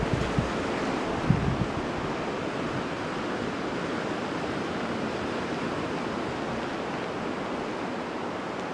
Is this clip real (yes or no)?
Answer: yes